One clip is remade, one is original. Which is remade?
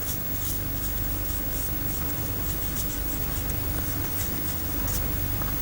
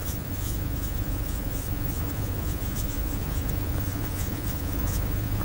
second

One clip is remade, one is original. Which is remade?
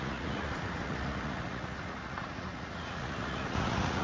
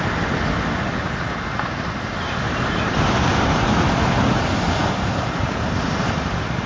first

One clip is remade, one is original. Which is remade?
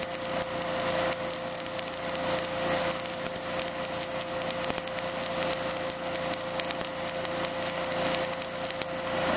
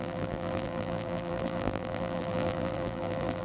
second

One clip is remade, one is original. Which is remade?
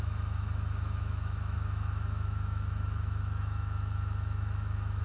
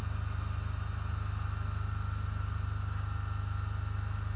first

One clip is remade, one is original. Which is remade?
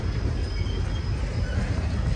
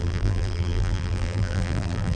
second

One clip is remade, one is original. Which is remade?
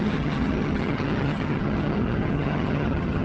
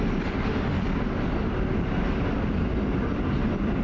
first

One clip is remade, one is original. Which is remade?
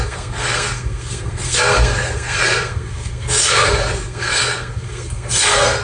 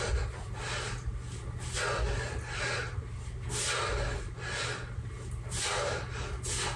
first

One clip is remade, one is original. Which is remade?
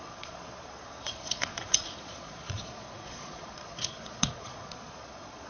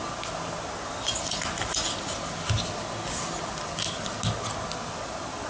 first